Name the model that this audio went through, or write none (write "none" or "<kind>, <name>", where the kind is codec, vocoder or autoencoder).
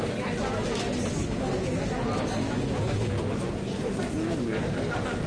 none